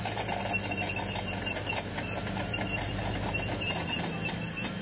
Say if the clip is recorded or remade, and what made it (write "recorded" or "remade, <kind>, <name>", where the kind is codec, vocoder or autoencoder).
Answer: recorded